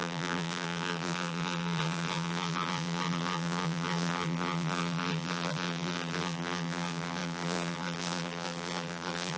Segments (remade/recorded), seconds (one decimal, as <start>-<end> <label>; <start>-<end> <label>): 0.0-9.4 remade